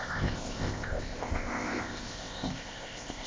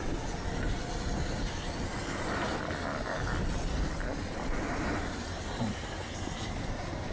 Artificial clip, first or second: first